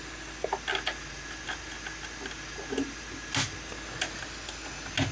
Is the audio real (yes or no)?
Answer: yes